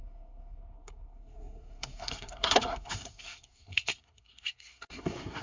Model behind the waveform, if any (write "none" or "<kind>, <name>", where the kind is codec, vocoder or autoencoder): codec, SNAC